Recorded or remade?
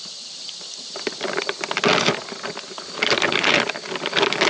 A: recorded